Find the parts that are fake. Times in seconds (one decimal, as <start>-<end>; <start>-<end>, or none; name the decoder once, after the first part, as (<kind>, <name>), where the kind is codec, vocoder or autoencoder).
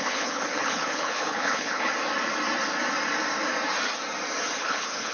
0.0-1.9 (codec, HILCodec); 4.6-5.1